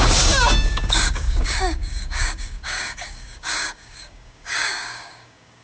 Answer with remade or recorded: remade